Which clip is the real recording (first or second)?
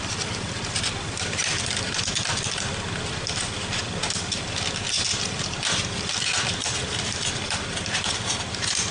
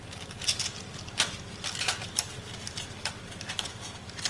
second